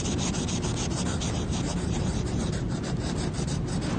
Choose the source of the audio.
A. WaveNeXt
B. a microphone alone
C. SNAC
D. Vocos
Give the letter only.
B